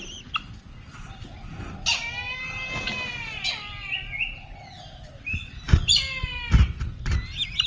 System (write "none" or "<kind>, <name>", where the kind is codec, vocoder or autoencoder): none